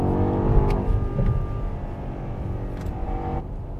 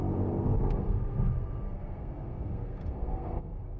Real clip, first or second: first